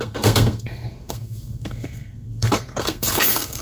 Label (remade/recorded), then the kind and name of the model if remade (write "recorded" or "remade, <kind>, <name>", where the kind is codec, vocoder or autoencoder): remade, codec, SNAC